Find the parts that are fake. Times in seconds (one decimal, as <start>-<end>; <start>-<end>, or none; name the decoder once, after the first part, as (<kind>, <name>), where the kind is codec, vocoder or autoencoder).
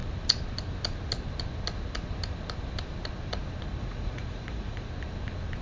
3.8-4.9 (vocoder, Vocos)